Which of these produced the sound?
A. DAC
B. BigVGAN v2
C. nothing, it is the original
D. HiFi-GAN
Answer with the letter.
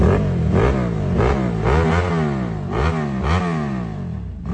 C